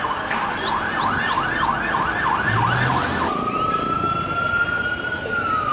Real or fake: real